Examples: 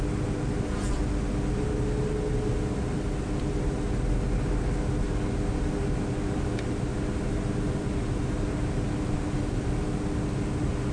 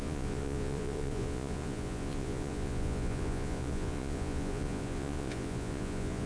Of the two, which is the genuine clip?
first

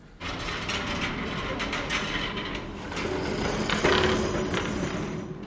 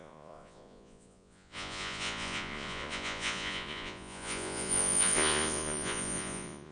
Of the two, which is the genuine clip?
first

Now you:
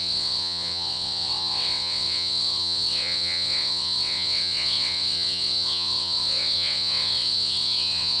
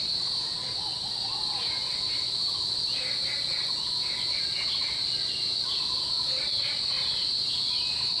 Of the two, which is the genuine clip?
second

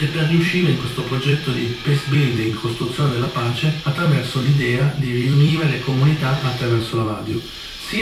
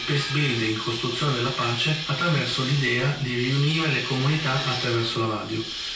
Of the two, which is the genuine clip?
second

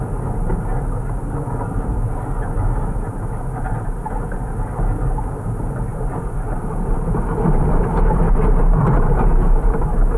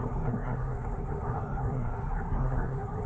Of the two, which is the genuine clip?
first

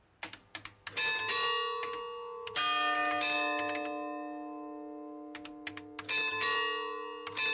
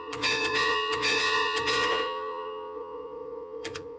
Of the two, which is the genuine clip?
first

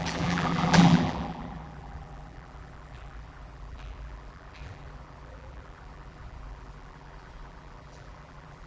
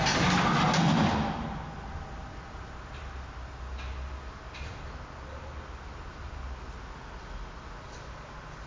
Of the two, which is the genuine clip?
second